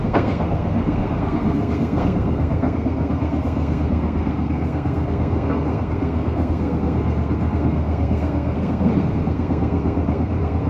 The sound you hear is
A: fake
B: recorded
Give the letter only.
A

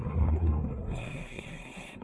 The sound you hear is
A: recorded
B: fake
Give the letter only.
B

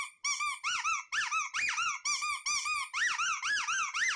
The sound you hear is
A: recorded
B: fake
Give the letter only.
A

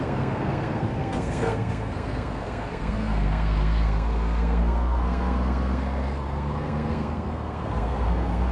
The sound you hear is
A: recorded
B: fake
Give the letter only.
B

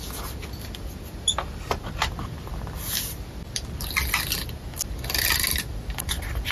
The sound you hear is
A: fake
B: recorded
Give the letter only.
B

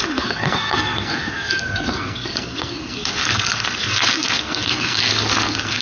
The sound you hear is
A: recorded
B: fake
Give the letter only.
B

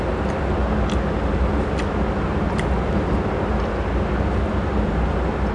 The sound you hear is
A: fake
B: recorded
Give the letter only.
B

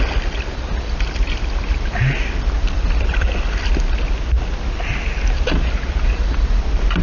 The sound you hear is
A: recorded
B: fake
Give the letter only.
A